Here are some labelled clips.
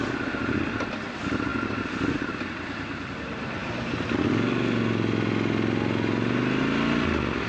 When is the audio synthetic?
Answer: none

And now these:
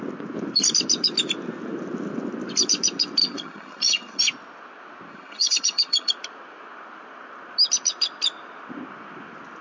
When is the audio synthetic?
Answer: 3.2-4.2 (vocoder, HiFi-GAN); 5.1-6.1

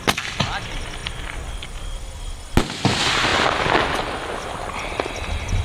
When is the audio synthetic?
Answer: none

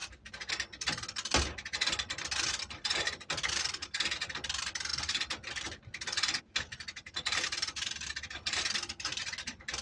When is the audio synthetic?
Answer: none

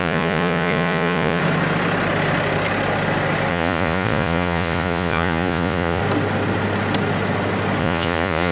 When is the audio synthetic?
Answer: 0.0-1.4 (vocoder, Vocos); 3.5-6.0; 7.8-8.5

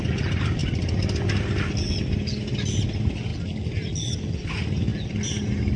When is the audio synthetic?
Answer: none

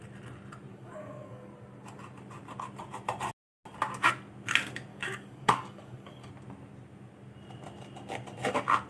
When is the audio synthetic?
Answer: 0.7-1.5 (codec, DAC); 4.9-6.3

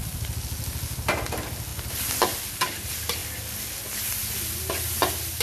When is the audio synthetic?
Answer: 4.2-5.0 (vocoder, BigVGAN v2)